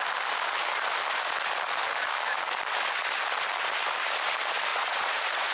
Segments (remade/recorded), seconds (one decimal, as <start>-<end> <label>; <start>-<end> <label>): 0.0-4.7 recorded; 4.7-5.5 remade